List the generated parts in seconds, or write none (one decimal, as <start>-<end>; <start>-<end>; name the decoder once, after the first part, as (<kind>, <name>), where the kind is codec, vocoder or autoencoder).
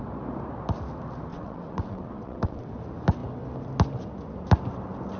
1.3-2.7 (vocoder, WaveNeXt)